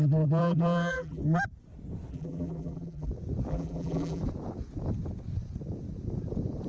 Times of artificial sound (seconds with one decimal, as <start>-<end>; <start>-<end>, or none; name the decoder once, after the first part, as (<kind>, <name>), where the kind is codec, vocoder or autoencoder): 0.4-1.2 (vocoder, BigVGAN v2); 2.1-3.1; 3.5-4.2